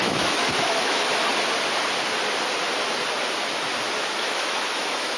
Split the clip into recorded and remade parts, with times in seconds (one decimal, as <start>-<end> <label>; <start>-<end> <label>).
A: 0.0-1.1 remade; 1.1-4.2 recorded; 4.2-5.2 remade